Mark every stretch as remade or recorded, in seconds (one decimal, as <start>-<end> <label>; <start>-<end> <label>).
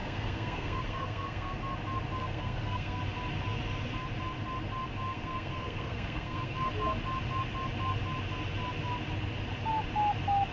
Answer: 0.0-1.6 remade; 1.6-2.2 recorded; 2.2-3.0 remade; 3.0-5.1 recorded; 5.1-6.7 remade; 6.7-10.5 recorded